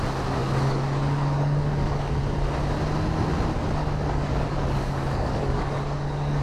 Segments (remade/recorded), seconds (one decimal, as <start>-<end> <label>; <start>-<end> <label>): 0.0-0.4 recorded; 0.4-2.1 remade; 2.1-3.8 recorded; 3.8-6.4 remade